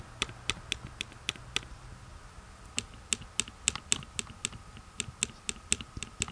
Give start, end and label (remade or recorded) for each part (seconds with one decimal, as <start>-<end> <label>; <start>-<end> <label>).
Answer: 0.0-6.3 recorded